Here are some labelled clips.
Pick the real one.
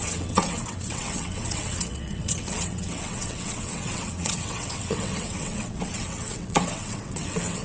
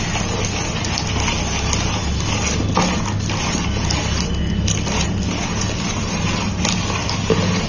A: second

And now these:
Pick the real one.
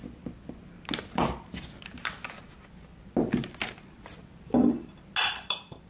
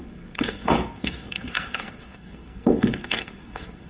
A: first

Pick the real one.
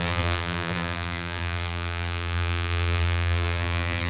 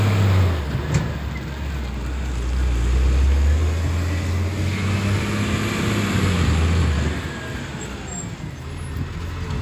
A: second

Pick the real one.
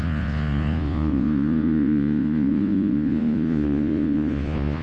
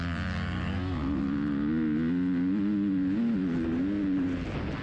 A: second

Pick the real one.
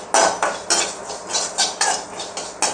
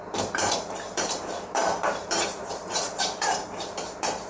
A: first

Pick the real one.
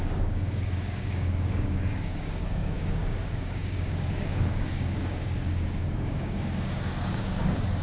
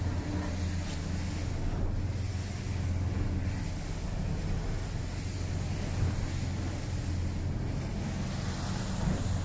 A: second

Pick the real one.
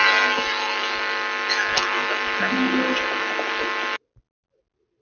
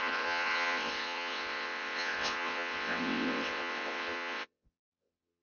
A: first